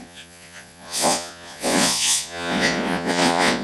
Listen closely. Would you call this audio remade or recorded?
remade